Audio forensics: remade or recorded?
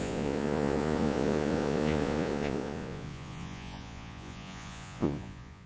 remade